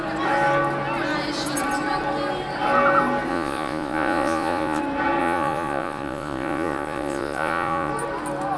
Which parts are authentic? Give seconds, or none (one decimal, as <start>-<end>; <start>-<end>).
0.0-3.3; 4.8-5.2; 7.9-8.6